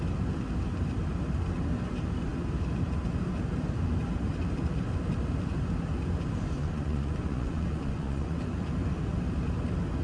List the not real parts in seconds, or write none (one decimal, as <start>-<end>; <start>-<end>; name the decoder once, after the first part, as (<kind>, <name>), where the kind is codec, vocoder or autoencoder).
6.6-8.4 (vocoder, Vocos)